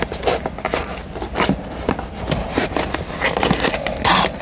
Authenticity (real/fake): real